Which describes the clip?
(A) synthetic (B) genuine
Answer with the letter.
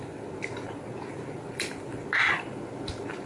B